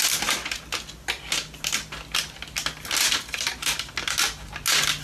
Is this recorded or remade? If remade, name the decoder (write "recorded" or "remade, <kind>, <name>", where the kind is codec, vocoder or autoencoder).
recorded